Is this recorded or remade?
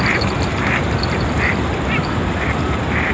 remade